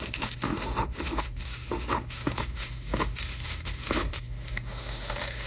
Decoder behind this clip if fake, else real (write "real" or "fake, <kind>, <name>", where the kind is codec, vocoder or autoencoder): fake, autoencoder, DAC-VAE